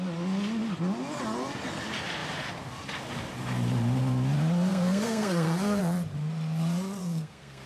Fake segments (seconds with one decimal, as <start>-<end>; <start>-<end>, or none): 4.7-5.8; 7.0-7.7